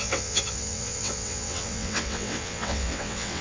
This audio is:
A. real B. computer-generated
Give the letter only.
B